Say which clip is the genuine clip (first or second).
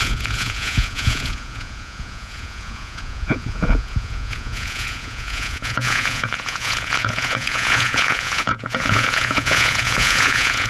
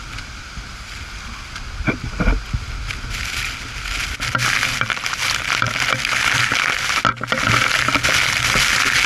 second